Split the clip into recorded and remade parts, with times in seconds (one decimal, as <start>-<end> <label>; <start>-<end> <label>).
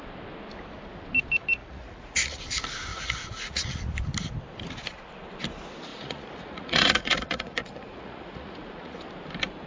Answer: 0.0-1.6 recorded; 1.6-2.4 remade; 2.4-2.9 recorded; 2.9-3.8 remade; 3.8-5.9 recorded; 5.9-9.0 remade; 9.0-9.7 recorded